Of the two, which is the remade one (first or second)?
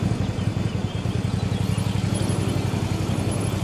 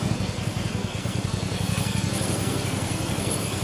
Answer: second